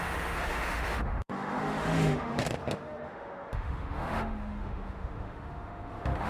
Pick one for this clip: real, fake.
fake